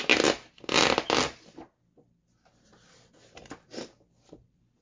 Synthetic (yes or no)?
no